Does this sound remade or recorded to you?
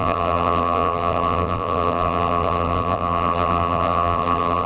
remade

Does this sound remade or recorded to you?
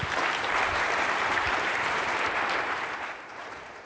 remade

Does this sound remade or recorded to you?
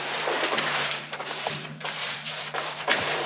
remade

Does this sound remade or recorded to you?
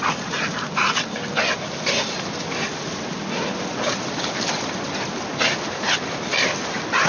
recorded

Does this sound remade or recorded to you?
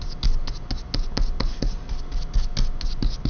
recorded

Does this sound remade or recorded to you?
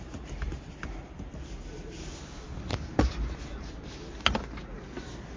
recorded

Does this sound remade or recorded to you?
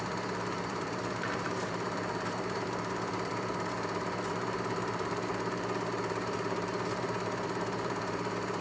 remade